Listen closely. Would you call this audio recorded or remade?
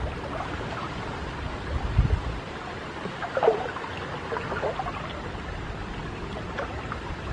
recorded